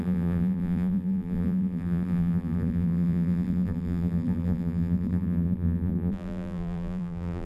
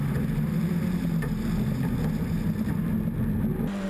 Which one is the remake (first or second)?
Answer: first